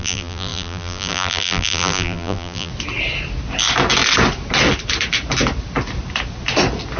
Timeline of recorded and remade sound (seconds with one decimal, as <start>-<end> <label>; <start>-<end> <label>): 0.0-2.7 remade; 2.7-7.0 recorded